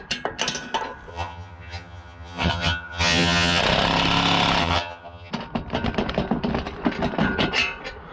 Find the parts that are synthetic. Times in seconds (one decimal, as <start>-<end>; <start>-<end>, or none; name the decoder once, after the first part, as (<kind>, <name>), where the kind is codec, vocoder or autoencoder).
1.1-3.6 (vocoder, HiFi-GAN); 4.6-5.3